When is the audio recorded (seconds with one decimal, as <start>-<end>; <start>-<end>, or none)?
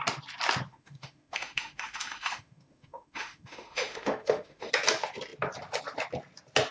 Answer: 0.0-0.7; 4.7-6.7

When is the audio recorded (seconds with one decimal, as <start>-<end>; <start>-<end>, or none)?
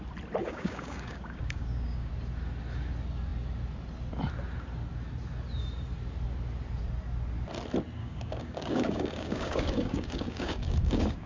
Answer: 0.0-0.4; 2.1-8.0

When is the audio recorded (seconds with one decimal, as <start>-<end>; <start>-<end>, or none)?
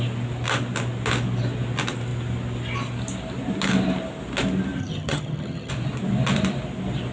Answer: 0.0-4.8; 5.7-7.1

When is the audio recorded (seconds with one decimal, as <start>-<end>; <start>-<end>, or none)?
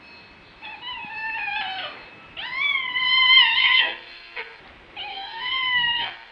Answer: 0.0-3.6; 4.6-5.1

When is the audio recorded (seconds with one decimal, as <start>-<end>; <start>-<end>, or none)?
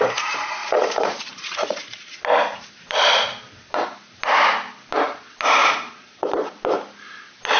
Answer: 0.0-0.6; 2.2-5.6; 6.6-7.6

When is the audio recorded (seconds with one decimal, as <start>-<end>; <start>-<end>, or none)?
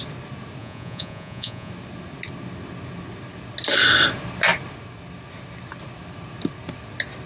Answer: 0.0-0.6; 1.7-7.3